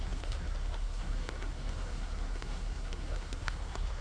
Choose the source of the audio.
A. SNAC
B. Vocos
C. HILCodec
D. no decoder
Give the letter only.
A